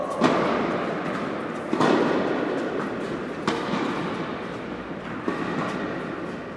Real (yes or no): yes